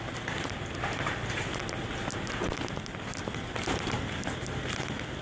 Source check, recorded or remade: recorded